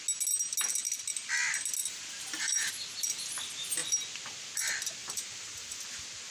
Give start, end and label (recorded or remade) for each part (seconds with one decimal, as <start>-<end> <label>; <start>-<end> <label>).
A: 0.0-1.8 recorded; 1.8-2.7 remade; 2.7-5.0 recorded; 5.0-5.8 remade; 5.8-6.3 recorded